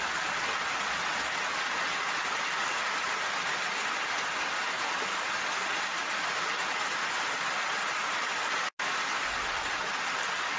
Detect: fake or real real